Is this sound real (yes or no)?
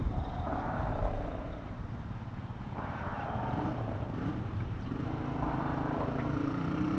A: no